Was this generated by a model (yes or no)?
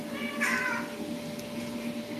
no